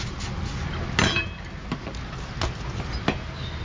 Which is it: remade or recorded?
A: recorded